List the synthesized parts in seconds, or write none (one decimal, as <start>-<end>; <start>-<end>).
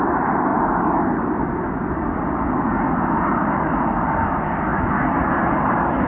none